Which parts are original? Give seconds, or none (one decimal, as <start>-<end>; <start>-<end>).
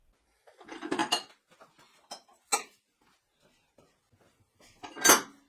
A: 0.0-5.5